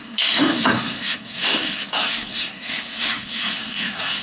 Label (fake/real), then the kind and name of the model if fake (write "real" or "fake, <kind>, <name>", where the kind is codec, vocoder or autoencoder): fake, codec, SNAC